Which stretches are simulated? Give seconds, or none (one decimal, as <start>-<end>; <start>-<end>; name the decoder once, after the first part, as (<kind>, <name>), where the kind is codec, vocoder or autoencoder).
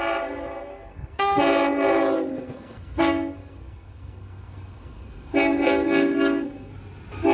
0.7-1.4 (codec, SNAC); 2.3-6.7